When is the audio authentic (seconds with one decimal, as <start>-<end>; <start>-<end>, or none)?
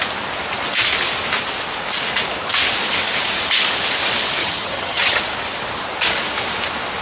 0.0-4.4; 5.2-7.0